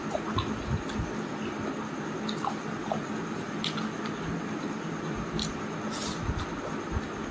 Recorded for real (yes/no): yes